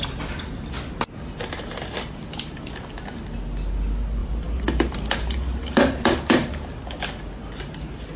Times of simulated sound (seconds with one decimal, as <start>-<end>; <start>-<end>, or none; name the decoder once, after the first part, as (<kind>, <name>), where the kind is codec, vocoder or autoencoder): 4.2-6.5 (vocoder, BigVGAN v2)